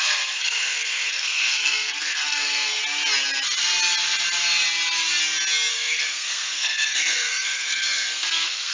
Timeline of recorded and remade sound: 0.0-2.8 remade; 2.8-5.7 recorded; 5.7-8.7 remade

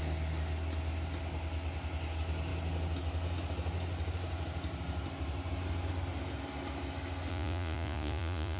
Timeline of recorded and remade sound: 0.0-7.3 recorded; 7.3-8.6 remade

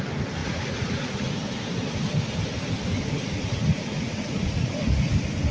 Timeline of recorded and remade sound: 0.0-0.4 recorded; 0.4-1.3 remade; 1.3-3.3 recorded; 3.3-4.7 remade; 4.7-5.5 recorded

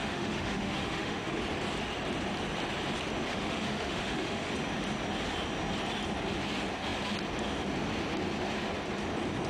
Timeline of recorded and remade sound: 0.0-1.4 remade; 1.4-3.3 recorded; 3.3-4.5 remade; 4.5-9.5 recorded

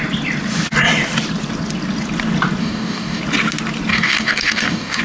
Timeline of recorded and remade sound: 0.0-2.6 recorded; 2.6-3.2 remade; 3.2-3.9 recorded; 3.9-5.0 remade

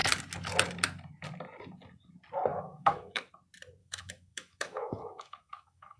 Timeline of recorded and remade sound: 0.0-2.5 recorded; 2.5-3.3 remade; 3.3-3.8 recorded; 3.8-6.0 remade

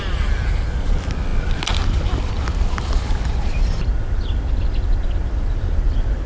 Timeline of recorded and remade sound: 0.0-6.3 recorded